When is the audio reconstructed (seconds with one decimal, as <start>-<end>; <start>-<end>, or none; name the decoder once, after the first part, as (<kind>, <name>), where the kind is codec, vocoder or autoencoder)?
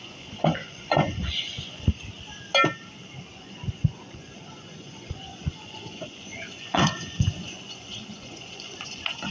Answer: 0.0-1.9 (vocoder, Vocos); 3.3-9.3